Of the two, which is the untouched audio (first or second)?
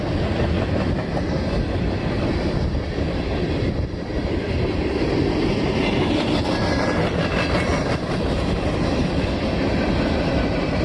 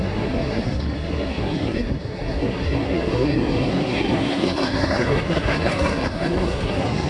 first